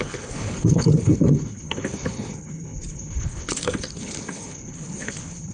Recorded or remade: remade